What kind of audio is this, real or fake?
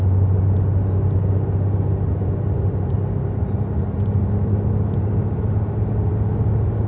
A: real